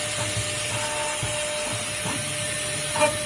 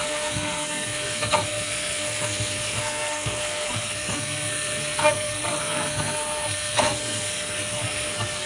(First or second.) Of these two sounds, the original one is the first